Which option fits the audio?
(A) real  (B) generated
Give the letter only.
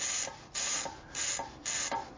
A